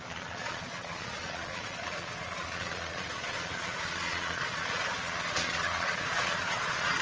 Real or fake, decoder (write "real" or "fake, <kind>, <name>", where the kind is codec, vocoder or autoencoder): fake, vocoder, Vocos